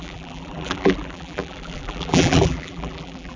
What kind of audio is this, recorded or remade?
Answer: remade